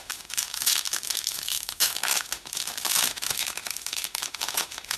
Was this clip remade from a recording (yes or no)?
yes